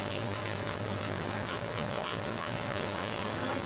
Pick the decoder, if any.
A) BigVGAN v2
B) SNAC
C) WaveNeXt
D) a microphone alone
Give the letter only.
C